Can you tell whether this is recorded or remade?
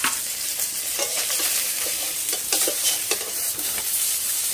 remade